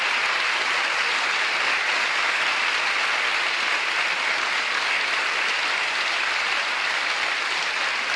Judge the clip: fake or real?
real